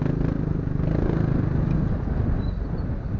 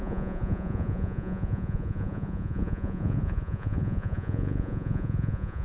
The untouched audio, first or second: first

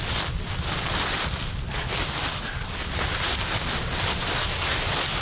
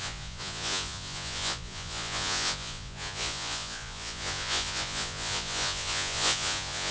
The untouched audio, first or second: first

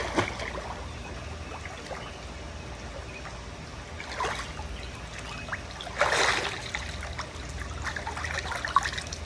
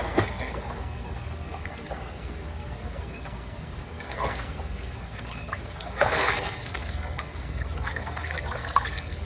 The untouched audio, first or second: first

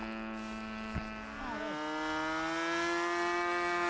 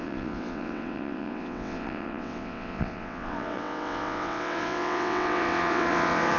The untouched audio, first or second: first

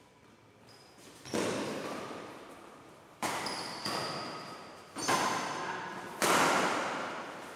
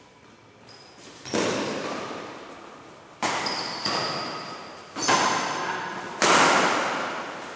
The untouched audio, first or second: second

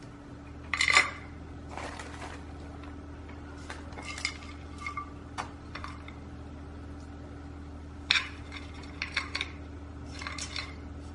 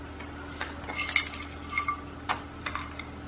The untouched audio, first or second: second